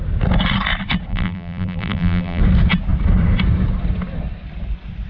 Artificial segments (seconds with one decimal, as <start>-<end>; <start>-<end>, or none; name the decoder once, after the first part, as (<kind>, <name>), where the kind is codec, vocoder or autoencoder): 1.1-2.4 (vocoder, BigVGAN v2)